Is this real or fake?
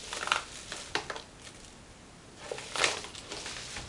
real